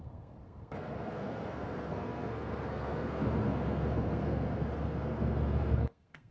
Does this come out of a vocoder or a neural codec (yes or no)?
yes